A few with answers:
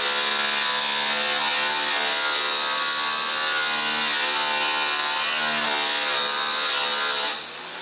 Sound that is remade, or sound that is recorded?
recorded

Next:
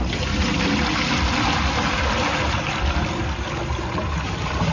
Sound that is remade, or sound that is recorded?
recorded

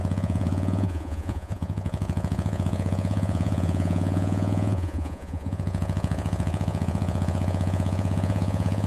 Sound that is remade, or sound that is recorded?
remade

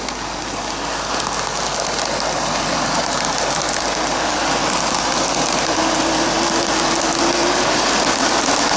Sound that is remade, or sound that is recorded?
recorded